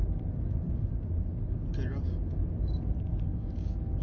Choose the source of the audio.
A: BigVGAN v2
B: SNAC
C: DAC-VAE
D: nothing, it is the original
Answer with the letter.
D